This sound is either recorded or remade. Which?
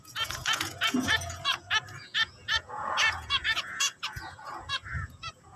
remade